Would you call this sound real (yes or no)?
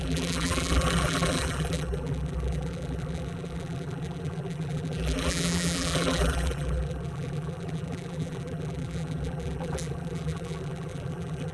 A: no